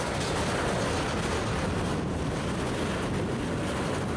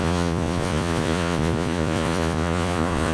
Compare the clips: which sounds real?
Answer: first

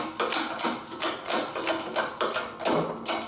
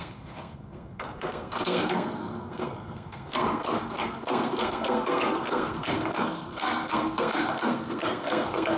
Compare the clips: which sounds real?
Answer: first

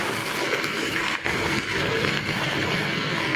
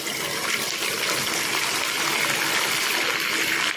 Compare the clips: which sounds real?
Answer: second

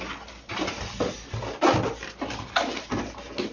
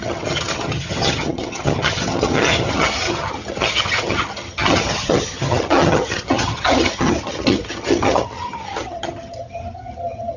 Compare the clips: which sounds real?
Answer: first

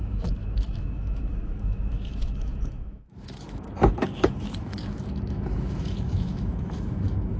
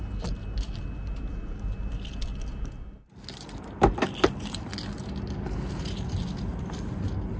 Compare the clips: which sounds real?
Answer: second